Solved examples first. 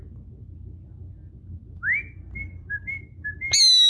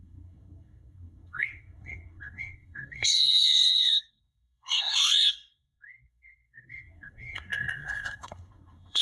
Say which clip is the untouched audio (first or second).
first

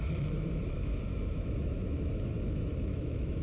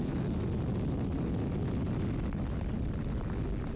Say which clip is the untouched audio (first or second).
second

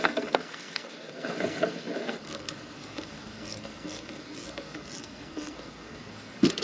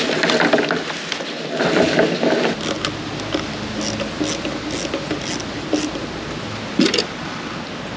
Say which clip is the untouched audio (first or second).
second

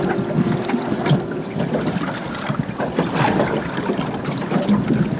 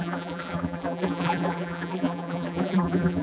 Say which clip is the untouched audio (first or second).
first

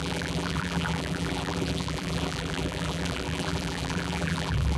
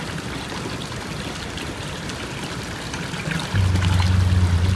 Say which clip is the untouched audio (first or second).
second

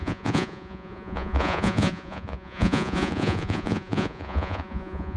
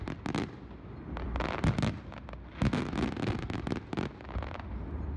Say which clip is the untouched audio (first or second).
second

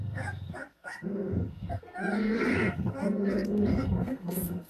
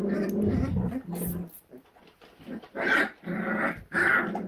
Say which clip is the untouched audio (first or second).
second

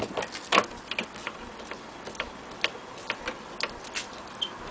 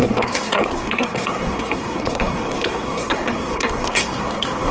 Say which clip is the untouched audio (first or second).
first